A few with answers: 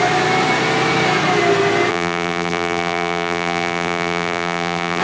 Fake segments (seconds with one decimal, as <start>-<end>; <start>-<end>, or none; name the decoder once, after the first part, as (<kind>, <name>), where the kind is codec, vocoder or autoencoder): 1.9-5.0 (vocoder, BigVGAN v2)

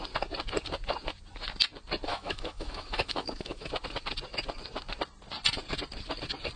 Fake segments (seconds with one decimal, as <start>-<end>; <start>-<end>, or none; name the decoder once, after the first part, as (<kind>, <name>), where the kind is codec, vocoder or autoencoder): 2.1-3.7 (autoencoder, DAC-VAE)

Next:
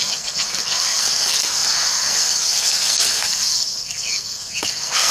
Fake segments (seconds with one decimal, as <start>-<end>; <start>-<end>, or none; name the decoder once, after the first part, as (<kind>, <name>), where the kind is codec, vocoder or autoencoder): 0.0-5.1 (codec, SNAC)

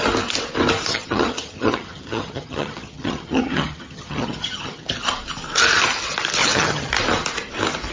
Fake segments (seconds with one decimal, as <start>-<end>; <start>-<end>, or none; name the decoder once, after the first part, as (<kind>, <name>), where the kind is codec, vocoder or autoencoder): 0.9-4.9 (vocoder, HiFi-GAN); 6.4-6.9